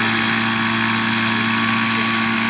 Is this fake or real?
real